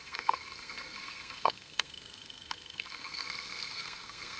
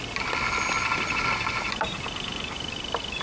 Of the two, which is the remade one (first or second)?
first